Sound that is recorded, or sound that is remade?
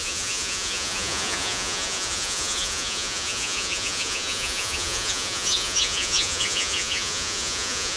remade